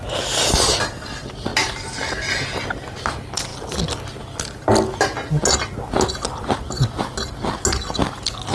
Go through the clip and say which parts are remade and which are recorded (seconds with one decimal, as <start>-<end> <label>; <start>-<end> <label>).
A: 0.0-8.5 recorded